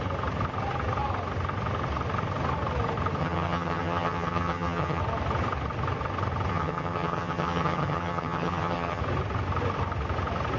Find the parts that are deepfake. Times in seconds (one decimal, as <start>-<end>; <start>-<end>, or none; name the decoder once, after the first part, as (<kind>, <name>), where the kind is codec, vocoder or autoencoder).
3.2-5.0 (vocoder, HiFi-GAN); 6.5-9.0